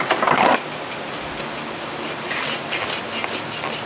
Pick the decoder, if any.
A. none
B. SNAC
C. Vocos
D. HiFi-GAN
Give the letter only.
A